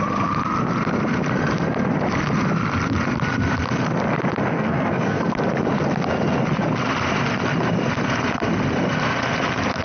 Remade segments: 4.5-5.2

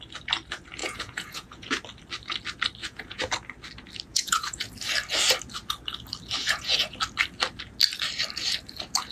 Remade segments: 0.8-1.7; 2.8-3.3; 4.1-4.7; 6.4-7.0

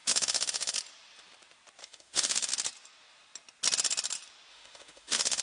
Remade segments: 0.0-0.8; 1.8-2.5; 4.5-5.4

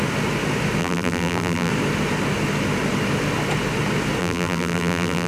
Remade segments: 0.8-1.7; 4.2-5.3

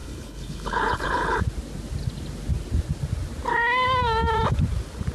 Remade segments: 0.0-1.4

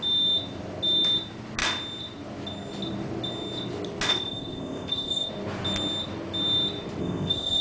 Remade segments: 4.1-5.3; 7.0-7.6